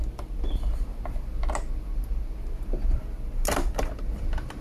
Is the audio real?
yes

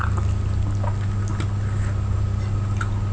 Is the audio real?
yes